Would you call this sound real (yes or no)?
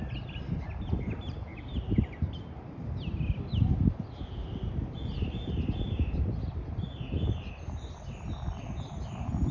yes